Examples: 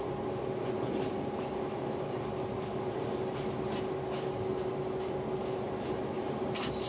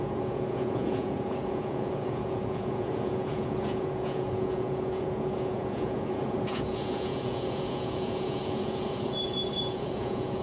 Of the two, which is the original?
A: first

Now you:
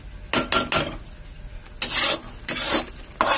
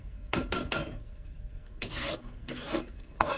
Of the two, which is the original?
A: first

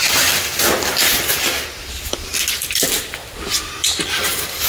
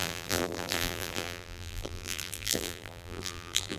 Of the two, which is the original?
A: first